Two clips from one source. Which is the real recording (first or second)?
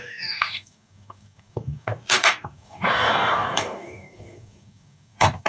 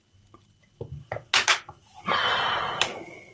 second